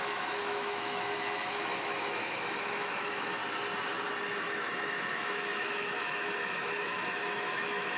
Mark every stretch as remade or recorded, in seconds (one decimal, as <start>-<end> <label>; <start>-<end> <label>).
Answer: 0.0-3.4 remade; 3.4-4.4 recorded; 4.4-8.0 remade